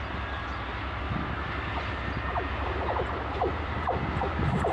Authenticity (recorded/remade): recorded